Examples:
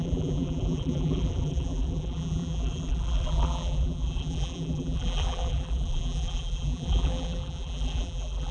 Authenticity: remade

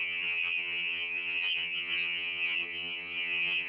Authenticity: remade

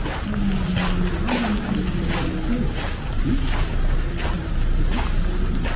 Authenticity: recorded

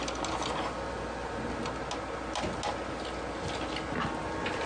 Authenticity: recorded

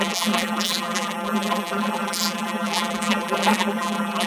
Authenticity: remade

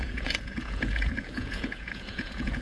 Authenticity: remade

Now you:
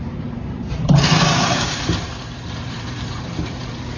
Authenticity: remade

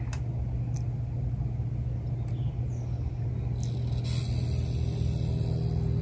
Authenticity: recorded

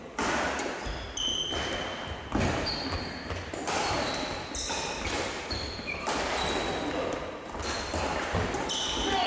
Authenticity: recorded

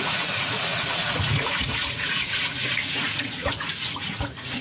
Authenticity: remade